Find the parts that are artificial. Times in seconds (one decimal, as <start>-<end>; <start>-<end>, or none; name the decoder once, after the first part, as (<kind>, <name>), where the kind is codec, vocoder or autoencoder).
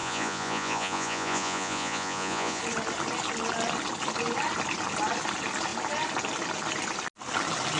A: 0.0-2.6 (vocoder, Vocos)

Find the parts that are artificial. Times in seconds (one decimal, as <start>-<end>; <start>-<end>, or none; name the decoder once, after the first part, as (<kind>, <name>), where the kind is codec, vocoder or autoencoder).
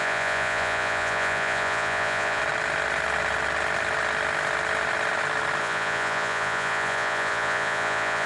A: 0.0-2.4 (vocoder, Vocos); 5.6-8.3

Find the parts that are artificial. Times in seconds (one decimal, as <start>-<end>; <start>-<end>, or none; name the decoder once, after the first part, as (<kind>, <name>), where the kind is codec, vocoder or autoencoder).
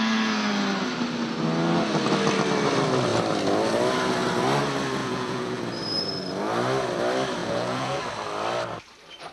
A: 5.0-5.6 (vocoder, Vocos); 7.4-8.0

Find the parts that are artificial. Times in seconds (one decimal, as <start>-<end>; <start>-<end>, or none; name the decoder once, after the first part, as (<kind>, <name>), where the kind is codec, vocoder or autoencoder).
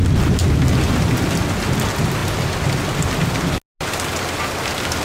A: none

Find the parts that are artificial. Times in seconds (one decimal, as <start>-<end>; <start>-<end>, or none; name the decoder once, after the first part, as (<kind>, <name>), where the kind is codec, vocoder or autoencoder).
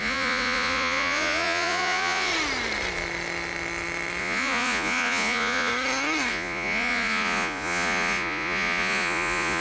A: 0.0-2.3 (vocoder, Vocos); 4.2-5.7; 6.3-9.6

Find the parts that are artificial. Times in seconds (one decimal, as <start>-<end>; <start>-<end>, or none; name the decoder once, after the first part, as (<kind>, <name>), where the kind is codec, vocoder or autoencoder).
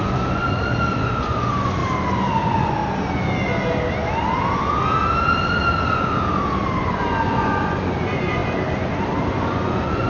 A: 0.0-1.8 (vocoder, Vocos); 2.3-2.8; 6.8-8.4; 9.3-10.1